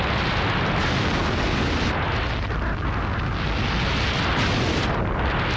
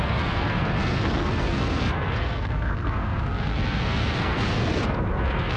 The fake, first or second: second